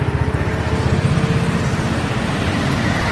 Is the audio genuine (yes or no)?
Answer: yes